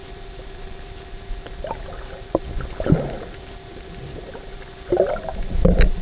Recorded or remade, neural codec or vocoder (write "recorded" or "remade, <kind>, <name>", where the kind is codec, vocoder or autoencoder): remade, vocoder, BigVGAN v2